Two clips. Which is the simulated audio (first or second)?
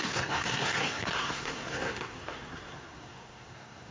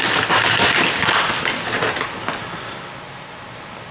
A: first